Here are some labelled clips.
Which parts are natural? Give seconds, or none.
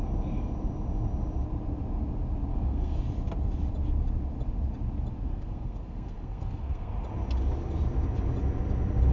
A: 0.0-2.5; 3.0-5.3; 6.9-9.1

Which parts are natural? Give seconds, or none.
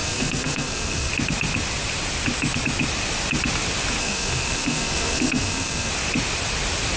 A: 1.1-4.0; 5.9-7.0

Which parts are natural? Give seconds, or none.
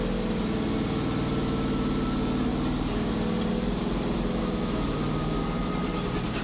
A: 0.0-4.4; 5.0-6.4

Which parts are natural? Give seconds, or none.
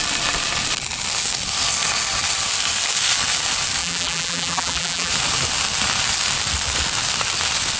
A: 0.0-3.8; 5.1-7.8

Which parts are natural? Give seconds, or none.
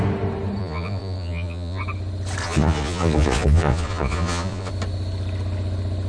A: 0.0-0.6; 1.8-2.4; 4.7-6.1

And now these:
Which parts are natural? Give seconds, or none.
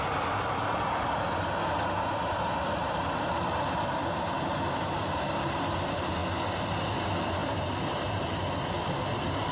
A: 6.2-6.9; 7.4-9.5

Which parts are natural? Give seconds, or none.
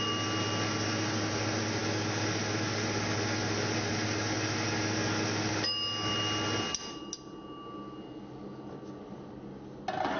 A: 0.0-10.2